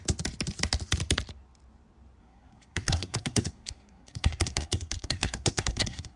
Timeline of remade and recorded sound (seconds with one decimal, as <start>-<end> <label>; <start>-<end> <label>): 0.0-2.2 recorded; 2.2-6.2 remade